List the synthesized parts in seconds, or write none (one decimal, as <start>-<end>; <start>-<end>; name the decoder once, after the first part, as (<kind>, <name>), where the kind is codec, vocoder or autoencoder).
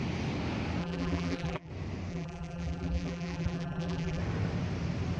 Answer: 0.8-1.7 (vocoder, BigVGAN v2); 2.1-4.2